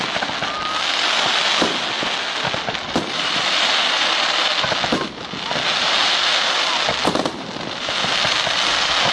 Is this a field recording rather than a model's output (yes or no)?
yes